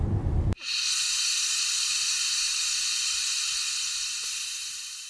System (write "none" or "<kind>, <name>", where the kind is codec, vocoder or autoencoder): none